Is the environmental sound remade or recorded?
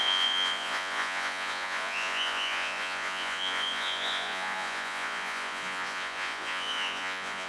remade